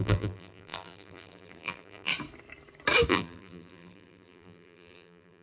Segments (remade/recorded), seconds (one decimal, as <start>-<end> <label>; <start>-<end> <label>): 0.0-2.1 remade; 2.1-3.1 recorded; 3.1-5.4 remade